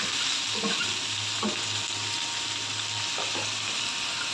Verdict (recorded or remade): recorded